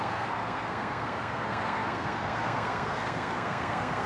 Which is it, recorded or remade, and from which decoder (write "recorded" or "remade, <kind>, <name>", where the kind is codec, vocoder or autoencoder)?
remade, codec, SNAC